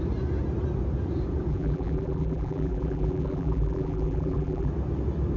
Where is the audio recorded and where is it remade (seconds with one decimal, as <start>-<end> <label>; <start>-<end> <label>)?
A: 0.0-1.5 recorded; 1.5-4.7 remade; 4.7-5.4 recorded